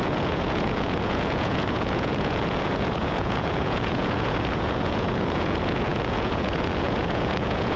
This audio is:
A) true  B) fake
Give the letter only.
B